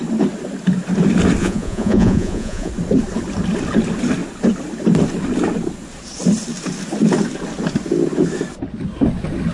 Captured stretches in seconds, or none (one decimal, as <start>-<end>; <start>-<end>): 0.0-1.4; 2.7-9.5